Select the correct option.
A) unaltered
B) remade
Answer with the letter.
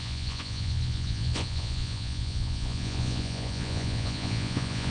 B